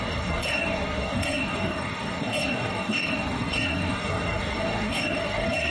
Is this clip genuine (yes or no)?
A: no